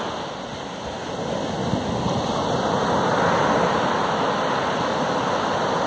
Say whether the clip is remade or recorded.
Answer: recorded